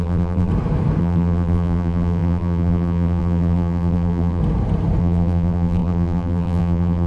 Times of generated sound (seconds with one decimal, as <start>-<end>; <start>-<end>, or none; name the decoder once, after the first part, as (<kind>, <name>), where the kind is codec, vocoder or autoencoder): 0.0-0.5 (vocoder, BigVGAN v2); 1.0-4.4; 5.0-7.1